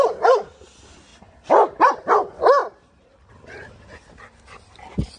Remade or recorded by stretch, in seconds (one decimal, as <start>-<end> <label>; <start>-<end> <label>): 0.0-5.2 recorded